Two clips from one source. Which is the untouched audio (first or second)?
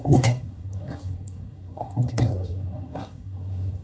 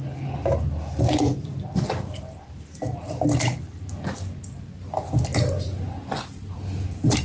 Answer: second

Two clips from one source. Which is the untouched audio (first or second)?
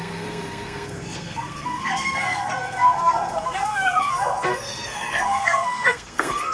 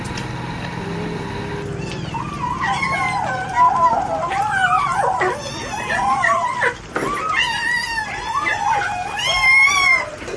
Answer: second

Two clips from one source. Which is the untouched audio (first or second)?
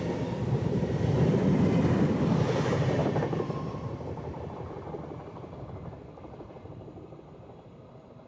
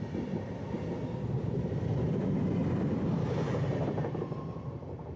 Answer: second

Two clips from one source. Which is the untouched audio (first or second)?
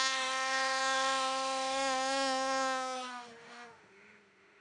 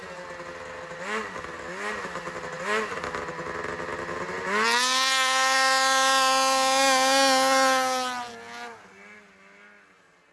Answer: second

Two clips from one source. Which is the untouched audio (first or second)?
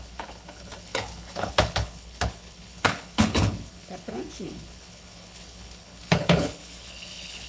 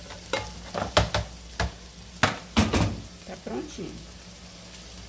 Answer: second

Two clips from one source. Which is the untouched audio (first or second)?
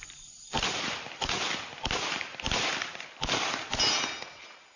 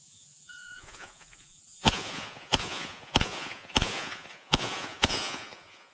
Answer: first